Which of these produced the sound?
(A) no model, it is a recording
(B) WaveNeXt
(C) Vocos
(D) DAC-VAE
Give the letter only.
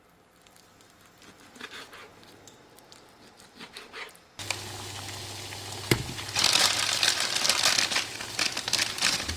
A